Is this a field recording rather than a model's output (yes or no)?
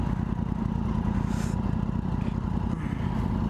yes